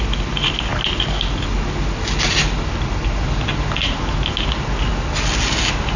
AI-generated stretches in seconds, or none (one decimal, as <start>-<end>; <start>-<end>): none